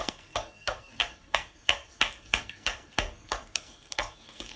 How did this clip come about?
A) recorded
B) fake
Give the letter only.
B